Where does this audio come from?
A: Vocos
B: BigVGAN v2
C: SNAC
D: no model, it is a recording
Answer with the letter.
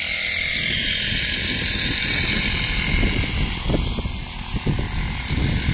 D